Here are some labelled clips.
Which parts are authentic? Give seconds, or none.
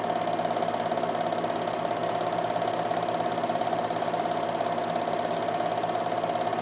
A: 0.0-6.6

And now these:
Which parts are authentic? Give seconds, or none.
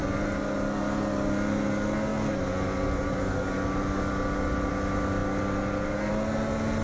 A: 0.0-6.8